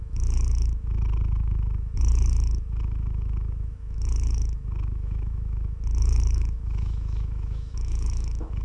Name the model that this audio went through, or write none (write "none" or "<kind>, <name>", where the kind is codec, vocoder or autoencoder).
autoencoder, DAC-VAE